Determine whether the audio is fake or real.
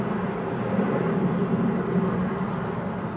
real